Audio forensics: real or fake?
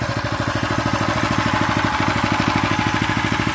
real